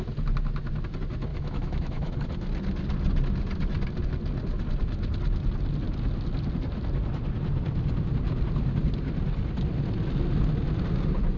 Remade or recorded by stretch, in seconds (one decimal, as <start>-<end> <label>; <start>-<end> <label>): 0.0-1.3 recorded; 1.3-2.1 remade; 2.1-11.4 recorded